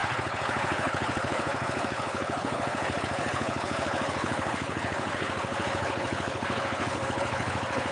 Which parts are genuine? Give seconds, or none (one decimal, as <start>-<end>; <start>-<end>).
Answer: none